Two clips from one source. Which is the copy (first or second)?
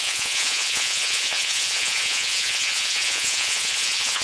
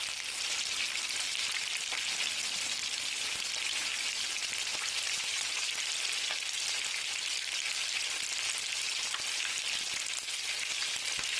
first